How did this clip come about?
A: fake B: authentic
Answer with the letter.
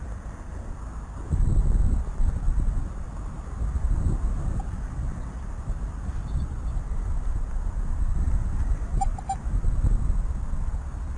B